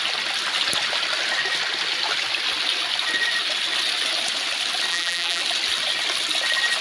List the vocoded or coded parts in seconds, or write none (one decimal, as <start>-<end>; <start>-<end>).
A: 4.9-5.4